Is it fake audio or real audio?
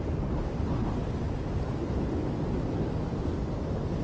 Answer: real